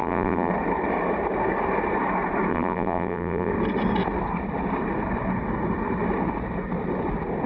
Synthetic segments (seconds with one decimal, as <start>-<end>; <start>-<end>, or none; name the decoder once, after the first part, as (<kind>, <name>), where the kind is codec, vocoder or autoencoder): 0.0-0.5 (vocoder, BigVGAN v2); 2.5-3.5